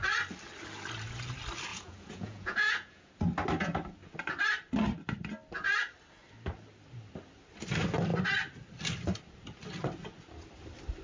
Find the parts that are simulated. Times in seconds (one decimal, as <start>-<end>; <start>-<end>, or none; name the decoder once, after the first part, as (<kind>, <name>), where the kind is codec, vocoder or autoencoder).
1.7-3.1 (vocoder, Vocos)